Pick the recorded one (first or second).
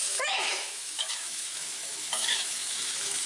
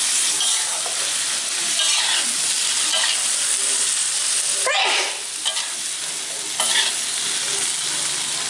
second